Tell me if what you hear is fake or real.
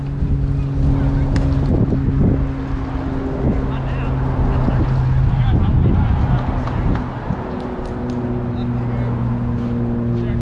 real